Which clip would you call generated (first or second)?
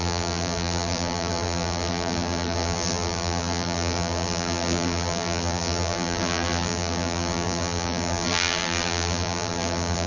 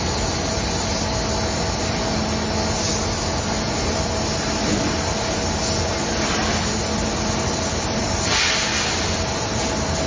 first